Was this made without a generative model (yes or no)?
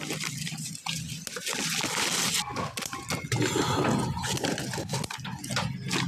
yes